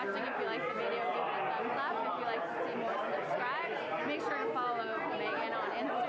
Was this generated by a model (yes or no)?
no